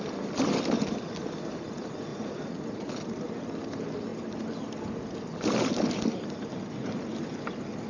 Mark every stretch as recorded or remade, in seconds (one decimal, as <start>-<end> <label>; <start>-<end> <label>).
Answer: 0.0-2.1 recorded; 2.1-2.9 remade; 2.9-7.9 recorded